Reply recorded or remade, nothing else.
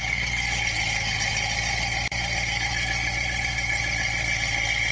recorded